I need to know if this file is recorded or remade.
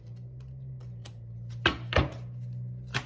recorded